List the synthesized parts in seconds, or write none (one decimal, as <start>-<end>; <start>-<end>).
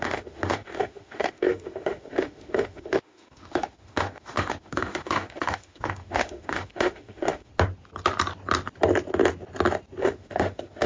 0.0-7.5; 10.0-10.9